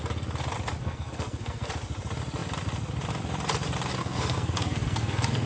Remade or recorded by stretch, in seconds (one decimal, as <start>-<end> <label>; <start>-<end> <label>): 0.0-0.8 recorded; 0.8-1.7 remade; 1.7-4.0 recorded; 4.0-5.5 remade